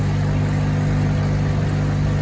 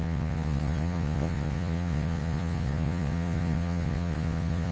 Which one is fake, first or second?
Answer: second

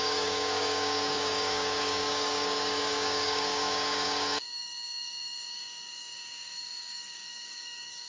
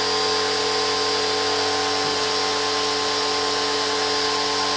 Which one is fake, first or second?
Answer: first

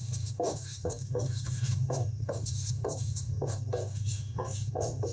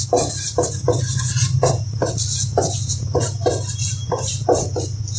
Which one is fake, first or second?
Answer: first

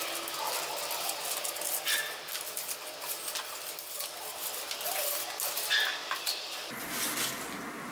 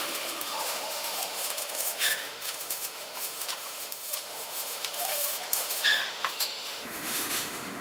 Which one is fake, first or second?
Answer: second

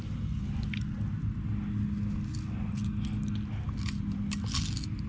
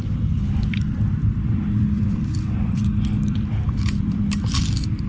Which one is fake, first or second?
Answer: second